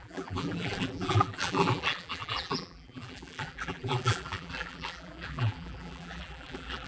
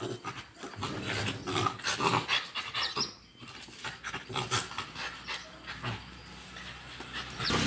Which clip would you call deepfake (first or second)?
first